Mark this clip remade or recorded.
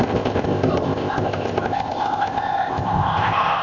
remade